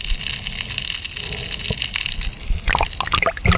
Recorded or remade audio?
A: recorded